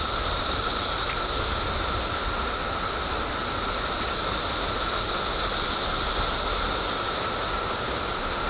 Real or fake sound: real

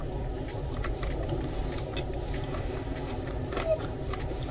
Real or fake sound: fake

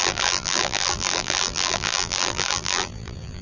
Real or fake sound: fake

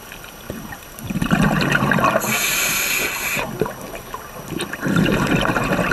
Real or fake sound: real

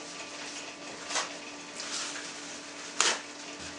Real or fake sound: real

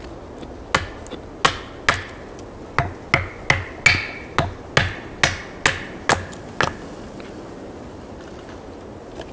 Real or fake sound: real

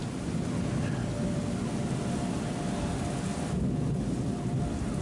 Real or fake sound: real